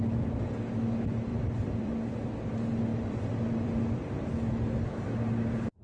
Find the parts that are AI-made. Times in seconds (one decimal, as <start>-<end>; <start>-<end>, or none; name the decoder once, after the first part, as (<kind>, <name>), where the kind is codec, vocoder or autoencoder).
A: 1.3-2.5 (vocoder, BigVGAN v2); 2.9-4.5